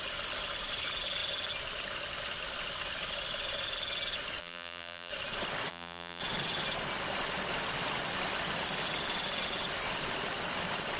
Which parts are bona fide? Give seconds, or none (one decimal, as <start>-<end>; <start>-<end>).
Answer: 0.0-4.4; 5.1-5.7; 6.2-11.0